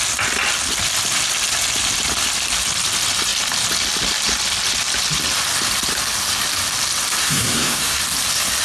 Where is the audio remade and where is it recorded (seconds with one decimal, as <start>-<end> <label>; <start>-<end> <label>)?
0.0-7.2 recorded; 7.2-8.0 remade; 8.0-8.6 recorded